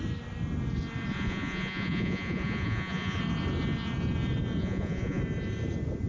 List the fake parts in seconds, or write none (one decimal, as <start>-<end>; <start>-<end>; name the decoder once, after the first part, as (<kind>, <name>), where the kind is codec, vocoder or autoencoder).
1.1-3.2 (vocoder, Vocos); 4.6-5.2